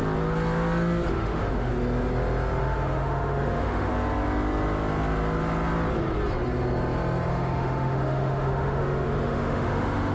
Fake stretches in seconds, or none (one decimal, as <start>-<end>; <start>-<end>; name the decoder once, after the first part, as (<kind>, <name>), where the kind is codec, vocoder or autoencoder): 1.1-1.7 (autoencoder, DAC-VAE); 2.6-3.9; 7.3-10.1